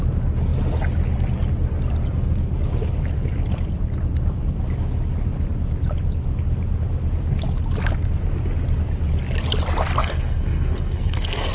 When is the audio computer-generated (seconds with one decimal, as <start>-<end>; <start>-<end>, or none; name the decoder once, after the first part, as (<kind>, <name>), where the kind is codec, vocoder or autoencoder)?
10.0-11.5 (codec, SNAC)